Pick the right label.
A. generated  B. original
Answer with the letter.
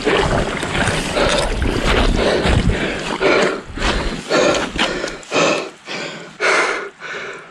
B